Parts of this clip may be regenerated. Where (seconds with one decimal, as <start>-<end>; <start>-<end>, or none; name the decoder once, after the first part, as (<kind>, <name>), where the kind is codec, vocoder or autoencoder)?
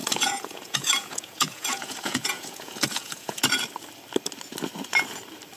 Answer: 0.0-3.4 (vocoder, Vocos)